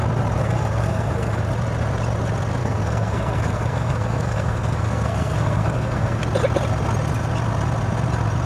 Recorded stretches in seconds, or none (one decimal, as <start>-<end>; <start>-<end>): 0.0-0.4; 1.4-2.6; 6.2-8.5